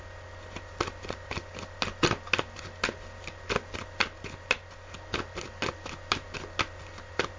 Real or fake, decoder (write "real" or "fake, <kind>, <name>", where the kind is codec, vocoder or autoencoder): real